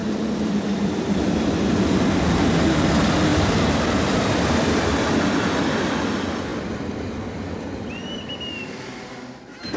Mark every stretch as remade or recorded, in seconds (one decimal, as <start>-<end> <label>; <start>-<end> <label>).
0.0-1.7 remade; 1.7-3.3 recorded; 3.3-5.1 remade; 5.1-6.5 recorded; 6.5-7.9 remade; 7.9-9.8 recorded